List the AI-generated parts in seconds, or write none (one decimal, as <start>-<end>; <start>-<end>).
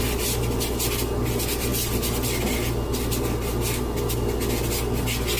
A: none